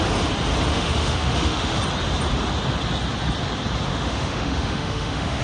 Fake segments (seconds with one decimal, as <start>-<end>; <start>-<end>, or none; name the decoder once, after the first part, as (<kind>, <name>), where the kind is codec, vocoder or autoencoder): 0.7-1.8 (autoencoder, DAC-VAE); 3.9-5.4